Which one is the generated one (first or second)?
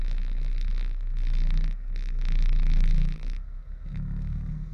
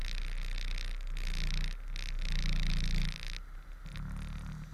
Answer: first